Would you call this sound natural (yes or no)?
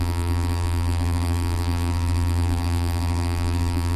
no